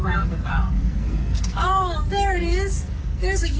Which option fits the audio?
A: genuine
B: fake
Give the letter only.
B